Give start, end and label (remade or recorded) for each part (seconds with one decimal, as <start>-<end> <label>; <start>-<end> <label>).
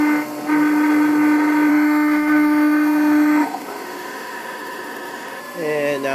0.0-1.7 recorded; 1.7-5.4 remade; 5.4-6.1 recorded